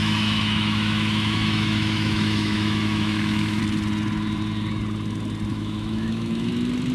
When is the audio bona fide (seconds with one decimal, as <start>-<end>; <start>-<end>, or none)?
3.6-5.5; 6.5-6.9